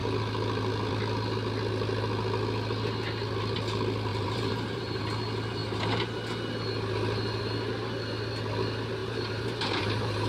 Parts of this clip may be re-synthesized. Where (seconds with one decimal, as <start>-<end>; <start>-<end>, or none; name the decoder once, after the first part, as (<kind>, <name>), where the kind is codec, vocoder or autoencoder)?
4.1-5.0 (vocoder, BigVGAN v2); 9.0-10.3